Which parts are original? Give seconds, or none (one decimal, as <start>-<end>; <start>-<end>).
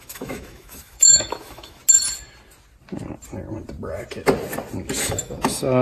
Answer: 1.8-5.0